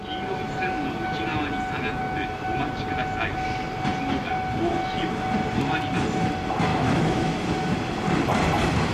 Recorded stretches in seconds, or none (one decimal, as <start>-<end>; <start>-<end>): 0.0-6.7; 7.5-8.9